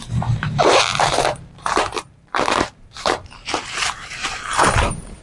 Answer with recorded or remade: remade